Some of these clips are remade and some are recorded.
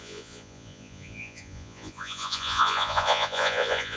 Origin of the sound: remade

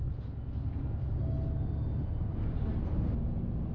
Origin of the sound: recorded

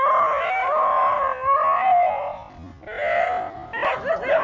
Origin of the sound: recorded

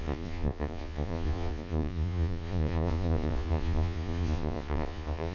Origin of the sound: remade